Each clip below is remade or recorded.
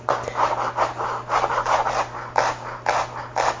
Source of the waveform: recorded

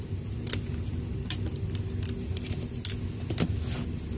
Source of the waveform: recorded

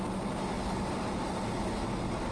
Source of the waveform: recorded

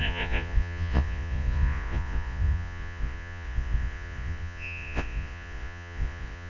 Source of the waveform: remade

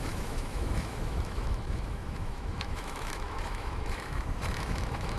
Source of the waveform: remade